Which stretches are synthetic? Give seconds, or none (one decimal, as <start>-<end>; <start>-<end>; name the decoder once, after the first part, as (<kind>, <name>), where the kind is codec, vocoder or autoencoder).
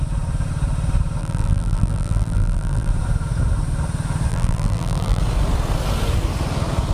1.2-2.9 (vocoder, BigVGAN v2); 4.3-5.2